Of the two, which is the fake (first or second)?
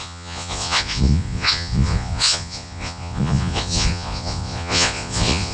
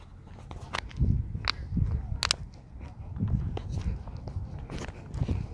first